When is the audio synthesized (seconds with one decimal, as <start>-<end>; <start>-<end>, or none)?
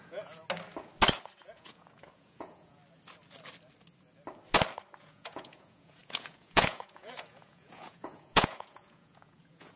0.0-0.4; 1.5-2.8; 5.0-9.8